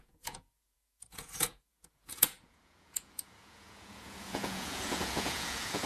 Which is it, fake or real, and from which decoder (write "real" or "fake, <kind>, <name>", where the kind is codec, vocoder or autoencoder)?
fake, vocoder, Vocos